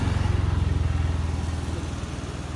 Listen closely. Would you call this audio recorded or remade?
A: recorded